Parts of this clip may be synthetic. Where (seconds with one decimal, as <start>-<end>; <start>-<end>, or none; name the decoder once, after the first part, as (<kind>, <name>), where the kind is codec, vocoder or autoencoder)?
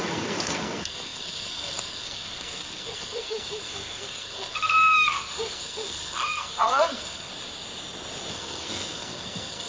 0.0-7.3 (codec, SNAC); 8.3-9.7